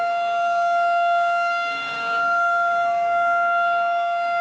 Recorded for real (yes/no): no